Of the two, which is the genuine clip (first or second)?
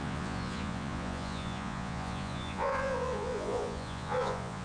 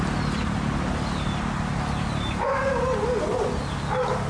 second